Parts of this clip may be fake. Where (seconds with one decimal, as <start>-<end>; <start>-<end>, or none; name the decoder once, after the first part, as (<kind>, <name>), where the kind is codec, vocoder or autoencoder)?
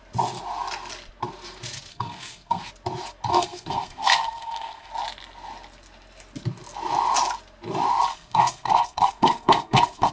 1.9-2.6 (codec, SNAC); 3.3-4.9; 8.1-10.1